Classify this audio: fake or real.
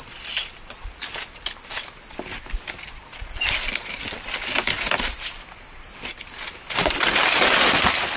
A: real